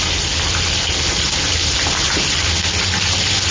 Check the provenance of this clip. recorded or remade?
recorded